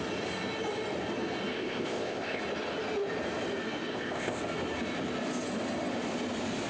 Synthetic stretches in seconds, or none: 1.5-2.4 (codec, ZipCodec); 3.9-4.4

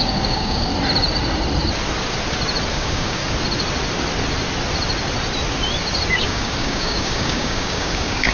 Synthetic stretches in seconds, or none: 0.0-0.7 (codec, DAC); 2.7-3.2; 6.2-8.3